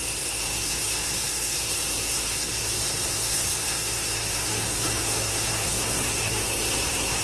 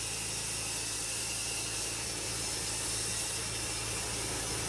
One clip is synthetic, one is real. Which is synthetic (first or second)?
first